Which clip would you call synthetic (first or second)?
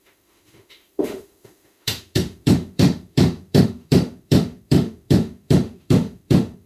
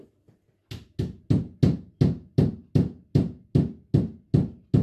first